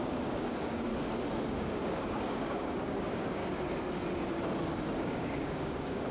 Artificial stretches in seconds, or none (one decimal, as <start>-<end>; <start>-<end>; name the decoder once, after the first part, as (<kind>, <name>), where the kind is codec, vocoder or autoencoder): 0.0-0.9 (codec, DAC); 1.5-3.4; 5.0-6.1